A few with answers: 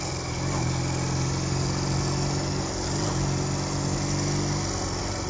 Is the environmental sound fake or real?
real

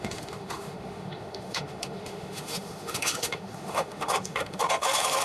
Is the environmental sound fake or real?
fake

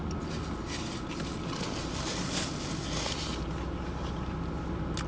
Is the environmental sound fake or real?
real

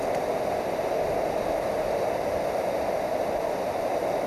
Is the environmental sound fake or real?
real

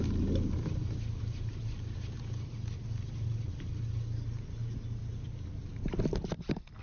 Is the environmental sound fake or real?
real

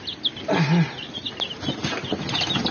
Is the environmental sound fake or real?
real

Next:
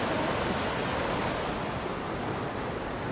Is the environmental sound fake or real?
real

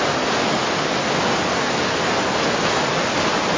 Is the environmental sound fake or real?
real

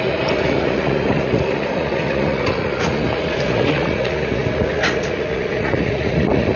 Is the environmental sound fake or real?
fake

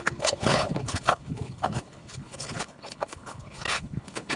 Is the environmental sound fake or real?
fake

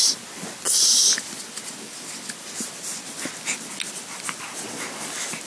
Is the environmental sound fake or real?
real